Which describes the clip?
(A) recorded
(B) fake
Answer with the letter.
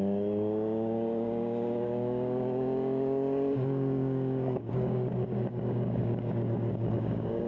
B